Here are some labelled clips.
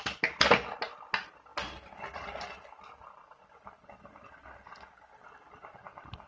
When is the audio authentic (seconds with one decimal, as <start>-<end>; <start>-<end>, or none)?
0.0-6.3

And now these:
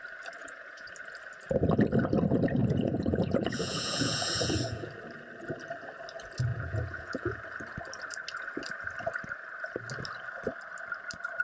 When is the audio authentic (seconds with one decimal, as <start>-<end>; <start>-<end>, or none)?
0.0-0.4; 0.9-2.6; 4.9-6.5; 7.4-11.4

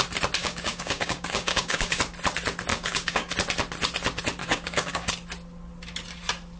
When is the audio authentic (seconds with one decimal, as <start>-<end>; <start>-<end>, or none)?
0.0-0.4; 2.0-2.7; 3.3-4.4; 5.1-6.6

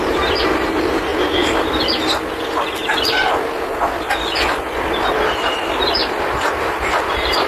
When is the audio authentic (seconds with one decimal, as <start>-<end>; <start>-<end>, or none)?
1.1-5.1; 6.0-6.5

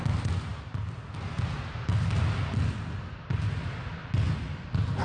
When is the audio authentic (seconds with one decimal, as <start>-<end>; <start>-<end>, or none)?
0.0-5.0